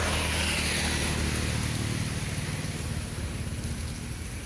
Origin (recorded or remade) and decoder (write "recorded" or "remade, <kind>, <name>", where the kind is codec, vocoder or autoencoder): recorded